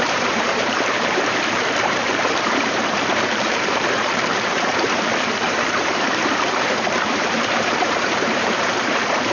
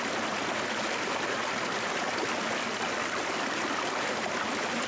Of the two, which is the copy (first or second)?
first